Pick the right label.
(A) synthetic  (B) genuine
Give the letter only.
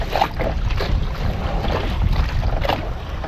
B